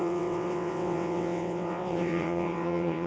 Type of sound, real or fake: fake